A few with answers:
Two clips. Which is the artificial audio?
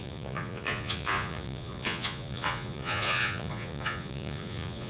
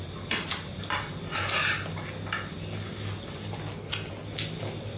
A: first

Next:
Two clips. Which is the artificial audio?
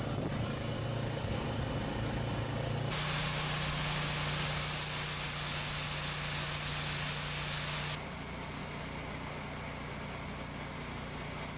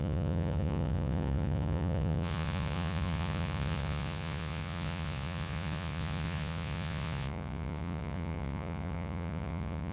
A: second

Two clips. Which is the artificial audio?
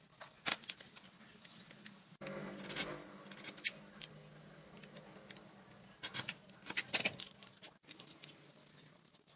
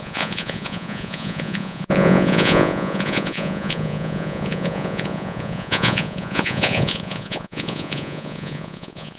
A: second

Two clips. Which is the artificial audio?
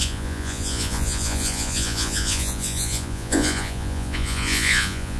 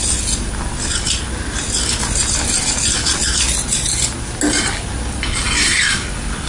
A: first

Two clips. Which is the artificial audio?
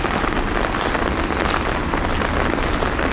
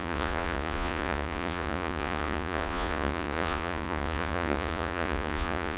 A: second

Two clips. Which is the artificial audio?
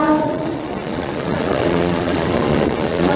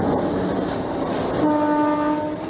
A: first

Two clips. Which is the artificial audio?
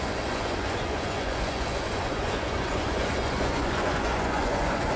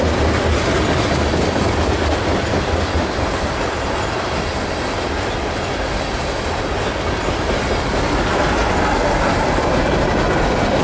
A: first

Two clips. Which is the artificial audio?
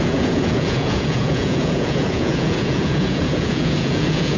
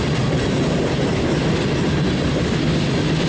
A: first